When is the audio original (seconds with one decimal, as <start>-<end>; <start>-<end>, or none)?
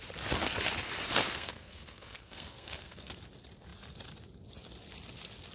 0.0-1.2; 3.1-5.5